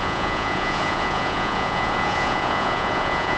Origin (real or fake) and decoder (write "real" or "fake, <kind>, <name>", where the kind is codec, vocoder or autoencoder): fake, vocoder, Vocos